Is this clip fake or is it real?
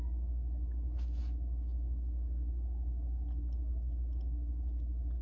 real